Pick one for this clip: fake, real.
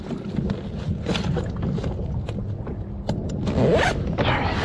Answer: real